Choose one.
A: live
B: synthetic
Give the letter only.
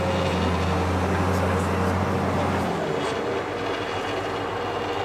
A